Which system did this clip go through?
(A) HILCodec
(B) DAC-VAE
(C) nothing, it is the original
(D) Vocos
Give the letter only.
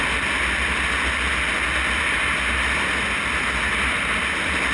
C